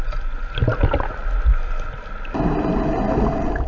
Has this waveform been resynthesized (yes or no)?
no